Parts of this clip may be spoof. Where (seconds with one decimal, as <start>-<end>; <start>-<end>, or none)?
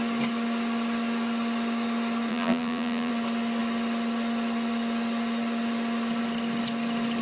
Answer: 2.3-3.1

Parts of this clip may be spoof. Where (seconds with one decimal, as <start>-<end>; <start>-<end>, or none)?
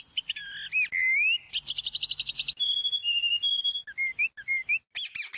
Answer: none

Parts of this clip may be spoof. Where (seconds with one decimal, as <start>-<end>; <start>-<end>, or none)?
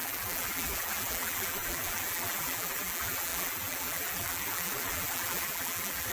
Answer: 0.0-6.1